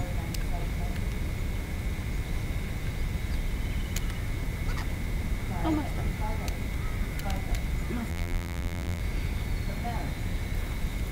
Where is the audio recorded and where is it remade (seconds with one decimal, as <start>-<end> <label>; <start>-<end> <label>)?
0.0-8.1 recorded; 8.1-9.0 remade; 9.0-11.1 recorded